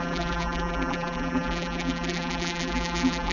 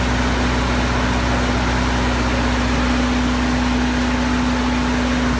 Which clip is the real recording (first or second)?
second